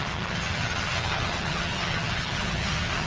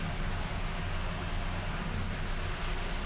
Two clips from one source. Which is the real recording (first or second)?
second